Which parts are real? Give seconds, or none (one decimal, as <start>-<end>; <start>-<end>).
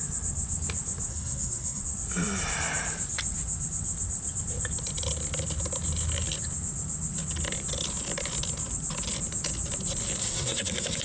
0.0-1.1; 1.8-10.2